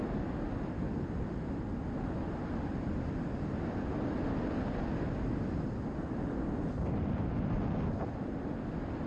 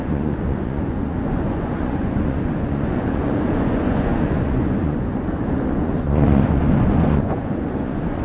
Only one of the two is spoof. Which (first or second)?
second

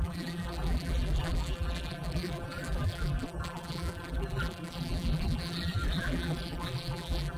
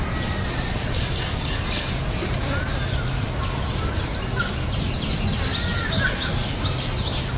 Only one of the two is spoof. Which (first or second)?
first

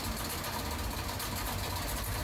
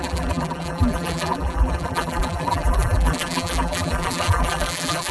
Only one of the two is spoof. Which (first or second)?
second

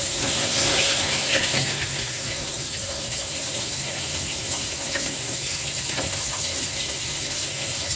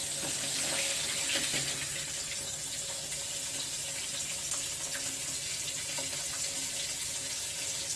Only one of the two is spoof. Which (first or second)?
first